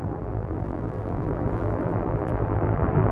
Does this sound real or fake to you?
fake